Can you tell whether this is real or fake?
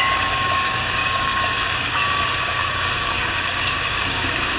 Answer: fake